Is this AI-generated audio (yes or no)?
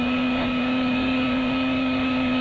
yes